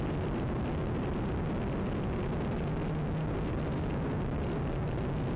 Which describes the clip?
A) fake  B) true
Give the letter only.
B